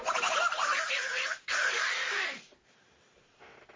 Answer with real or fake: real